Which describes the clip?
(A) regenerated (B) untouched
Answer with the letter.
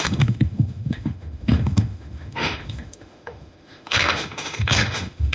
A